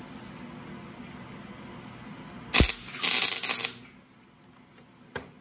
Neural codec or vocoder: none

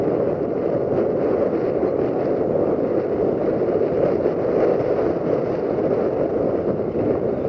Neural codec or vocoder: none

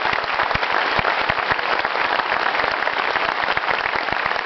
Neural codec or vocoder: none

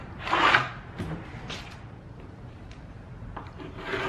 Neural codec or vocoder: vocoder, BigVGAN v2